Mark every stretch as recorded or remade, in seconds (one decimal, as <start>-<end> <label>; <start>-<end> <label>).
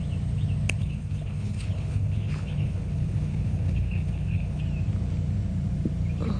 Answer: 0.0-0.8 recorded; 0.8-4.6 remade; 4.6-6.4 recorded